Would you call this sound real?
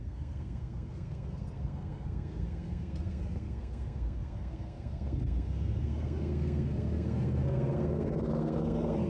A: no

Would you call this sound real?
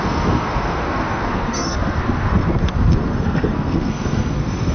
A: no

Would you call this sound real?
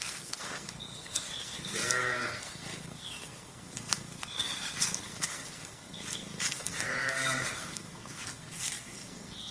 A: no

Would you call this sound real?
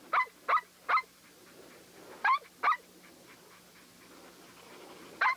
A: yes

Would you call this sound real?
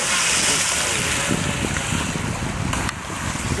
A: yes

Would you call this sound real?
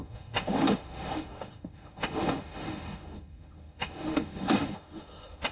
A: no